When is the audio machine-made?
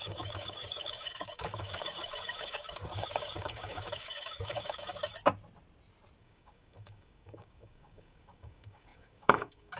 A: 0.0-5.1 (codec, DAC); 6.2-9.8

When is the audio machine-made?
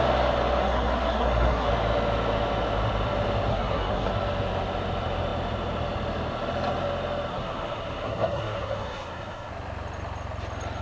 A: 0.6-1.7 (codec, SNAC); 3.5-4.1; 7.3-9.5